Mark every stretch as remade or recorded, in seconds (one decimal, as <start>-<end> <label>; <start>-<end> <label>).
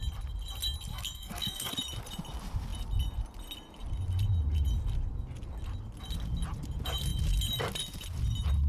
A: 0.0-0.9 recorded; 0.9-1.7 remade; 1.7-8.7 recorded